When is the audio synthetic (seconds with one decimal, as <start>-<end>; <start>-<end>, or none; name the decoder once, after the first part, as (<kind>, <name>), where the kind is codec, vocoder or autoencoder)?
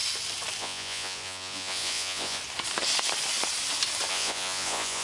0.6-2.4 (vocoder, Vocos); 4.1-5.0